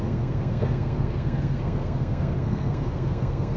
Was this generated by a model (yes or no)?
yes